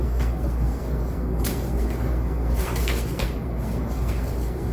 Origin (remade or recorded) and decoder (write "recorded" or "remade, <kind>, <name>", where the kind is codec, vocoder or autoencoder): remade, codec, SNAC